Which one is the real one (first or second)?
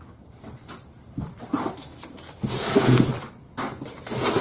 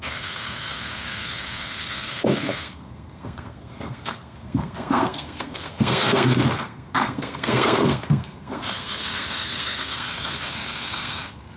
first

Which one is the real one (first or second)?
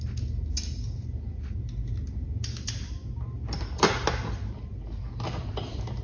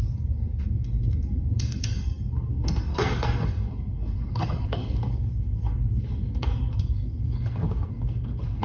first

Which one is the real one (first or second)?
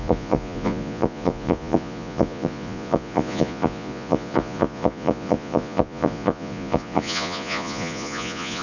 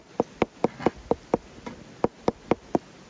second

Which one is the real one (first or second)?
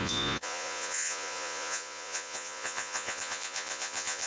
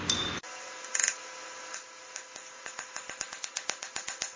second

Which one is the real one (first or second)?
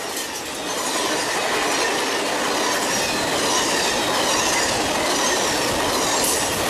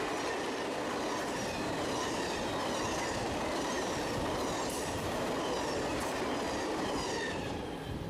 first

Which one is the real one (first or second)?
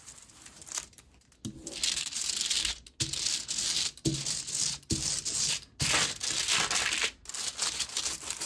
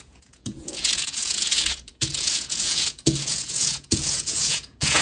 first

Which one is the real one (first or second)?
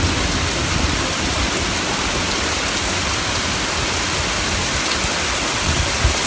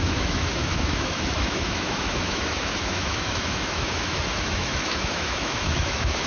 first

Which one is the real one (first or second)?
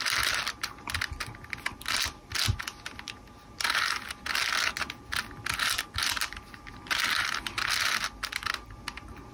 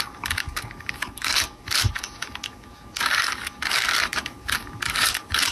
first